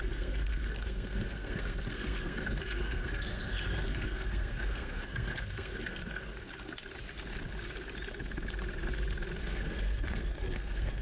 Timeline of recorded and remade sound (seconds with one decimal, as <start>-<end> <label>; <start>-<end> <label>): 0.0-6.0 remade; 6.0-9.4 recorded; 9.4-11.0 remade